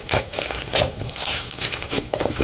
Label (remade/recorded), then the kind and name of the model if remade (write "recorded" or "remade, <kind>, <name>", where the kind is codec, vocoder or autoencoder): remade, codec, SNAC